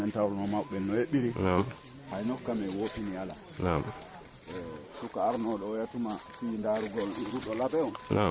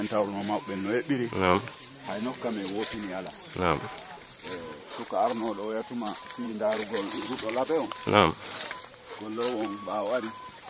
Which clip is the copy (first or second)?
second